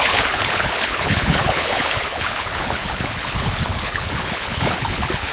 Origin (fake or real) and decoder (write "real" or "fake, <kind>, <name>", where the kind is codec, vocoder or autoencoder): fake, codec, HILCodec